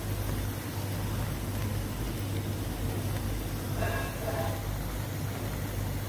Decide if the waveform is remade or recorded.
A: recorded